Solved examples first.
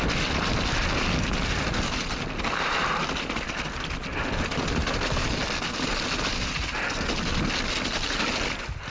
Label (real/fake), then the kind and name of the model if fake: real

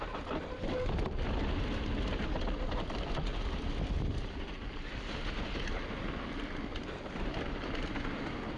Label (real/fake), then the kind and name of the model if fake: real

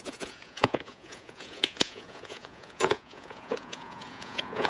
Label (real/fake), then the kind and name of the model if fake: fake, vocoder, Vocos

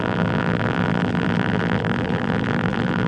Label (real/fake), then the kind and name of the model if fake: fake, vocoder, BigVGAN v2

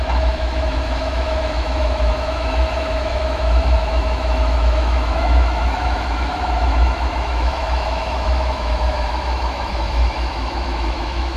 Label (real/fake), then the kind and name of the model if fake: fake, autoencoder, DAC-VAE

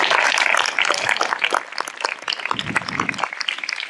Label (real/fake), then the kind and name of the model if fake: real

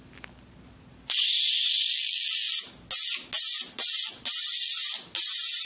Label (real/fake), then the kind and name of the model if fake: real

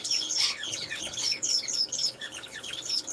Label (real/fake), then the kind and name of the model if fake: fake, codec, HILCodec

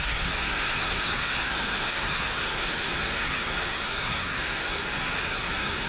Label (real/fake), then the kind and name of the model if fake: fake, codec, SNAC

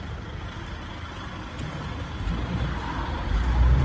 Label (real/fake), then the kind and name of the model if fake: real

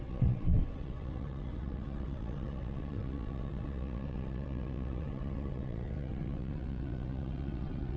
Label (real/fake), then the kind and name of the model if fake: fake, vocoder, WaveNeXt